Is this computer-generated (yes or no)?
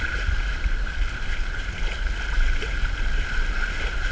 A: no